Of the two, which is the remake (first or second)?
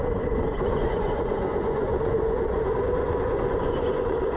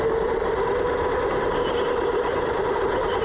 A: first